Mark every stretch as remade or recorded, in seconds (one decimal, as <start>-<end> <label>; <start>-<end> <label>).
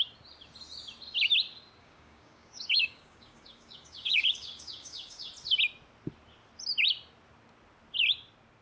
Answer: 0.0-1.8 recorded; 1.8-5.3 remade; 5.3-8.6 recorded